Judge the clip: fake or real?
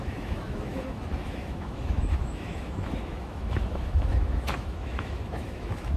fake